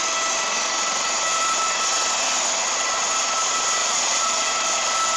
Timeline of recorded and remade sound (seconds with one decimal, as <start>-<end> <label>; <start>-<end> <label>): 0.0-3.8 recorded; 3.8-4.5 remade; 4.5-5.2 recorded

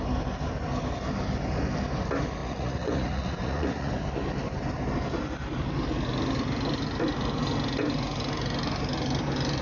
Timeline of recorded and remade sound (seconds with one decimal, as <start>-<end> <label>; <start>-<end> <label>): 0.0-2.4 recorded; 2.4-3.9 remade; 3.9-9.6 recorded

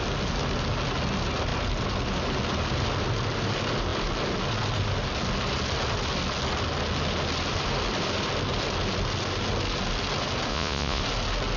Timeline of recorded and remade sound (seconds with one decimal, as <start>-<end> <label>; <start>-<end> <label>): 0.0-10.5 recorded; 10.5-11.0 remade; 11.0-11.6 recorded